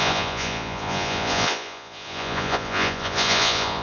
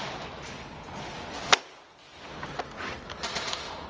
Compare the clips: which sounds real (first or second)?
second